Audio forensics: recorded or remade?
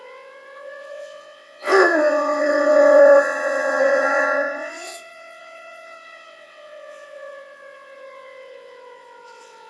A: remade